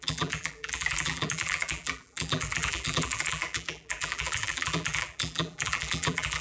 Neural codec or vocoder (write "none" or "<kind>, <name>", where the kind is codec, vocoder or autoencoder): vocoder, BigVGAN v2